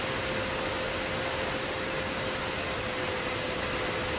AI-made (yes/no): no